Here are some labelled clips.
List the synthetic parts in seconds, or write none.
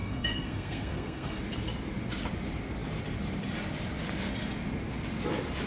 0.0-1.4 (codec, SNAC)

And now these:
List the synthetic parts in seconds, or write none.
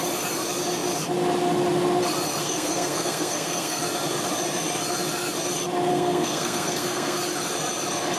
2.4-3.8 (codec, SNAC); 5.9-7.2